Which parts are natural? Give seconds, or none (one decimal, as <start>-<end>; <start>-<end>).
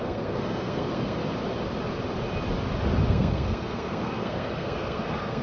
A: 1.2-3.1